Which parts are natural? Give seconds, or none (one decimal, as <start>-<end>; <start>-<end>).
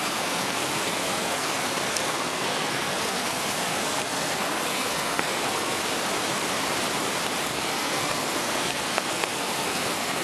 5.8-7.4